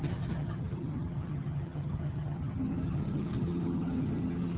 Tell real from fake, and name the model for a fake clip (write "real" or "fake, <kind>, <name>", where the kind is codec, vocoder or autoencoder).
fake, vocoder, HiFi-GAN